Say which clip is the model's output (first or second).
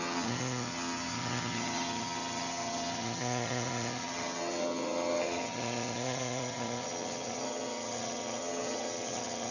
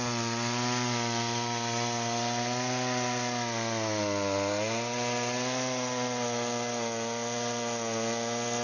first